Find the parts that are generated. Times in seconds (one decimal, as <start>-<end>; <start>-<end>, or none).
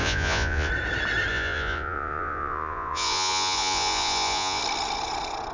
0.0-0.7; 1.3-4.6